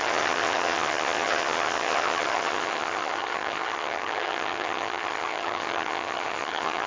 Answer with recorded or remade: remade